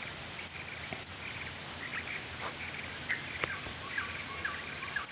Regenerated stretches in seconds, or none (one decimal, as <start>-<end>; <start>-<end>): none